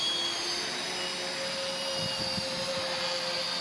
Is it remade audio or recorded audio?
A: recorded